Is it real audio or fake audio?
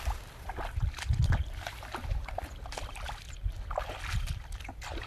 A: real